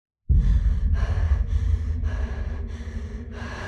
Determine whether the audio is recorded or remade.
remade